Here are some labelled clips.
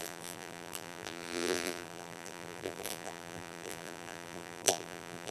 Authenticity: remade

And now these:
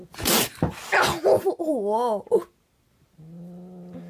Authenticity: recorded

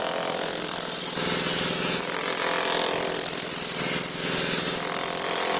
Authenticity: recorded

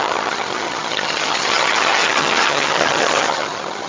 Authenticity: remade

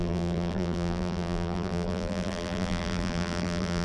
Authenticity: remade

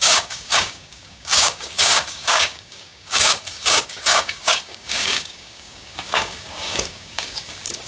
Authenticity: remade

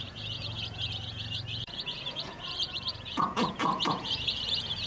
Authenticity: remade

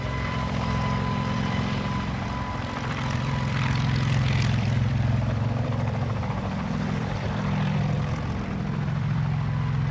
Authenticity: remade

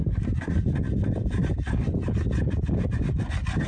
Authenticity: recorded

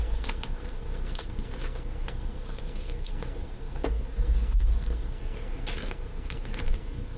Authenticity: remade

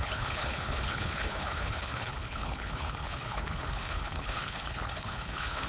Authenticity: remade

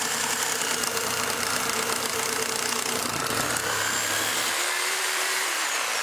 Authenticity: remade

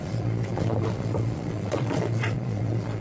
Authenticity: remade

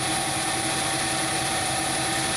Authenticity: remade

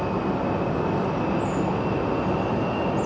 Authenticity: recorded